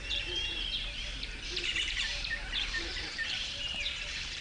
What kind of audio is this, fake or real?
fake